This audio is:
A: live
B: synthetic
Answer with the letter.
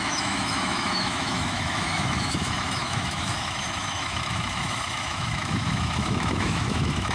B